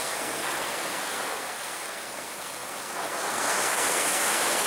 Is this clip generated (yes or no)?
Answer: yes